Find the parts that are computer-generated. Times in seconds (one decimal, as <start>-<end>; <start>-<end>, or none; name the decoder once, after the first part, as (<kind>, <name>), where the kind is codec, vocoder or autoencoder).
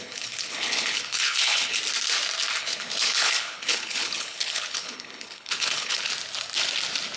0.0-1.8 (codec, HILCodec); 2.6-6.1